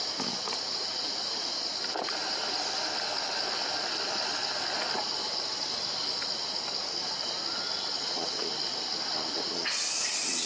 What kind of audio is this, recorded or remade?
recorded